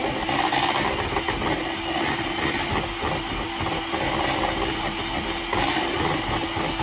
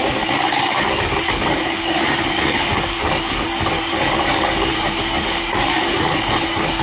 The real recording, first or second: first